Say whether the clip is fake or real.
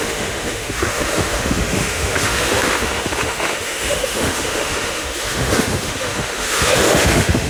fake